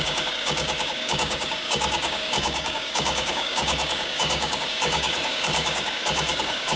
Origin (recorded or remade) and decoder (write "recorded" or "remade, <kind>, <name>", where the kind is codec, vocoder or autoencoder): remade, codec, DAC